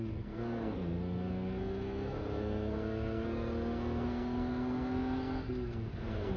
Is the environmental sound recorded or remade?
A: remade